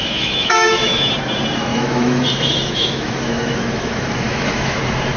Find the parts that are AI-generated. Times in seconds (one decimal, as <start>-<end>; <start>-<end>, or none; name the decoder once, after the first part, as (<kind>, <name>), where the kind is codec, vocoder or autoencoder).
0.0-1.1 (autoencoder, DAC-VAE); 1.7-4.8